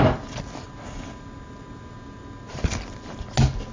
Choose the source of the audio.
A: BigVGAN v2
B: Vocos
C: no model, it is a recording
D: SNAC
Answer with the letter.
C